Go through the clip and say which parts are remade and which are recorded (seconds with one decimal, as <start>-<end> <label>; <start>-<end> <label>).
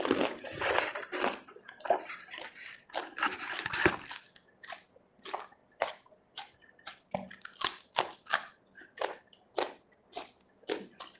0.0-11.2 remade